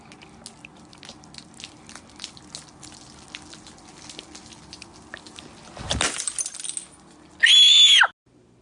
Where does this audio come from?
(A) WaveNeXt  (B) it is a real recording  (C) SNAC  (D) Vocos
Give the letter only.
B